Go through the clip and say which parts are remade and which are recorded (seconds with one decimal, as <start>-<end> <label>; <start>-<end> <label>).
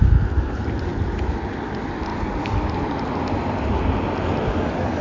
0.0-5.0 recorded